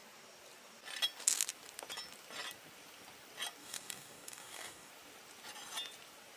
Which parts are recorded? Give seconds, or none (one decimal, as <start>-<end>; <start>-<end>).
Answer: 0.0-3.6; 4.9-6.4